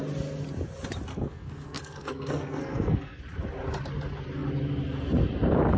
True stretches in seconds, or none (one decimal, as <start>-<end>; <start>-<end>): 0.0-1.1; 3.2-5.8